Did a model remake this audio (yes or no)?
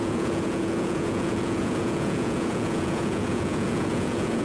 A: yes